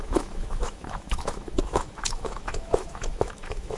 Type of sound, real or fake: fake